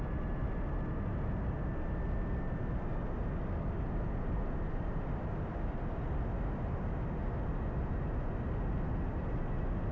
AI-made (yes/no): no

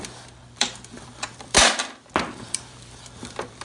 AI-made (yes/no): yes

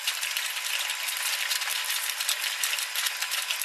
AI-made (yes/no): no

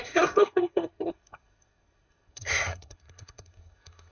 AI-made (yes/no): yes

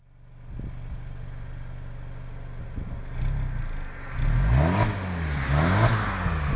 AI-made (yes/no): no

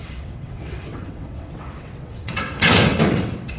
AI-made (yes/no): yes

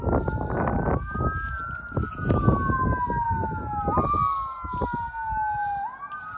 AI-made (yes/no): no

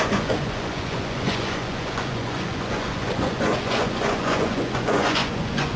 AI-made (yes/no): yes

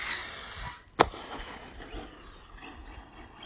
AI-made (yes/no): no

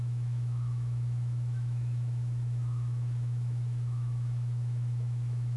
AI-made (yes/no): yes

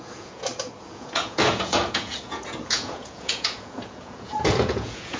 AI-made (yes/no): yes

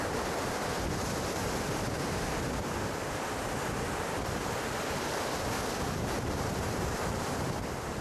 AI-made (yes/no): no